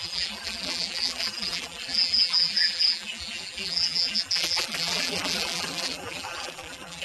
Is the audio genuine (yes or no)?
no